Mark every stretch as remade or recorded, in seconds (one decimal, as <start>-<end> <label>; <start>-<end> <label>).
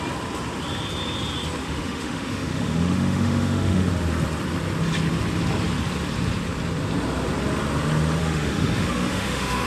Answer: 0.0-1.6 recorded; 1.6-3.9 remade; 3.9-8.2 recorded; 8.2-9.7 remade